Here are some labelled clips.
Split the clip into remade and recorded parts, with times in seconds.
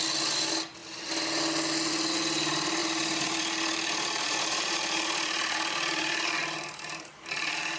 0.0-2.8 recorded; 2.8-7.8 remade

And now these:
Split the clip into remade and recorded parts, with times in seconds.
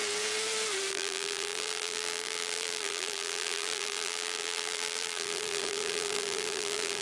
0.0-0.9 recorded; 0.9-7.0 remade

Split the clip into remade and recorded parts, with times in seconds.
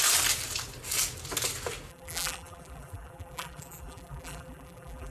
0.0-1.9 recorded; 1.9-5.1 remade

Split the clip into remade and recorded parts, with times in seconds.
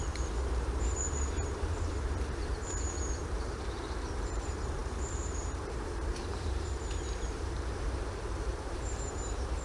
0.0-9.6 remade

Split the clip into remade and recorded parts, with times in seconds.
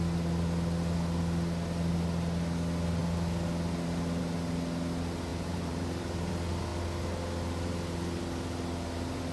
0.0-5.3 recorded; 5.3-6.3 remade; 6.3-9.3 recorded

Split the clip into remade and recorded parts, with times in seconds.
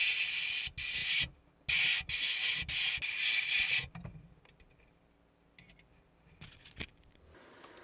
0.0-7.8 recorded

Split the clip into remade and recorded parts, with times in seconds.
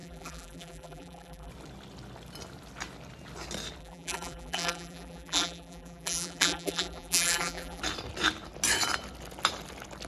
0.0-1.5 remade; 1.5-3.8 recorded; 3.8-7.8 remade; 7.8-10.1 recorded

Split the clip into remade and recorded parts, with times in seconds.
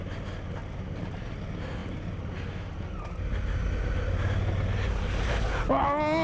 0.0-0.6 recorded; 0.6-1.1 remade; 1.1-6.2 recorded